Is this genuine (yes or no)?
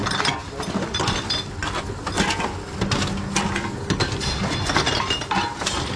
yes